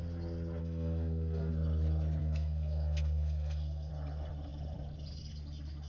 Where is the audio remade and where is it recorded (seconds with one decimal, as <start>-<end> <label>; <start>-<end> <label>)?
0.0-0.6 recorded; 0.6-1.5 remade; 1.5-2.2 recorded; 2.2-3.9 remade; 3.9-5.9 recorded

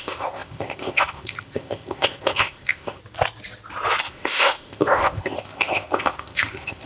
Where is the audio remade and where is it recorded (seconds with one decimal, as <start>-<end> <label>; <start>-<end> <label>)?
0.0-3.0 remade; 3.0-4.0 recorded; 4.0-6.9 remade

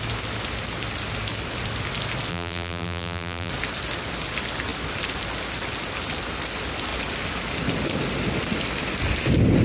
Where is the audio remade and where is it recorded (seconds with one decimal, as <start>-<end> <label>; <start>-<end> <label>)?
0.0-2.3 recorded; 2.3-3.5 remade; 3.5-9.6 recorded

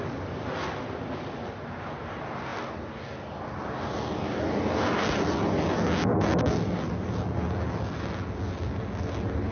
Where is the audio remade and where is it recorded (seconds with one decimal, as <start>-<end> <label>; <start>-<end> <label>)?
0.0-9.5 recorded

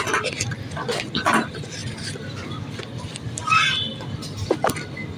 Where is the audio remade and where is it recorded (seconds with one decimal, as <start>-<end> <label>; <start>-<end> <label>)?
0.0-5.2 recorded